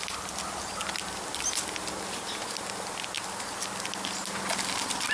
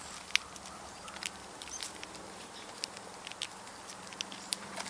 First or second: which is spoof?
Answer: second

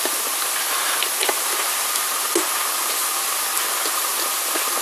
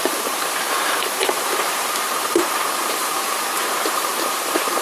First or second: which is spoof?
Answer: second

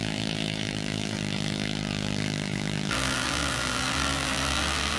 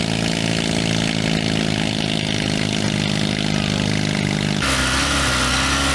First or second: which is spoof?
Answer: first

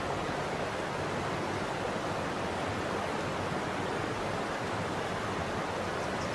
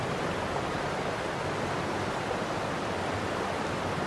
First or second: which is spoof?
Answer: second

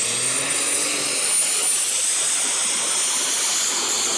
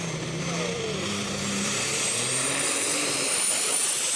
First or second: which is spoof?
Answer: second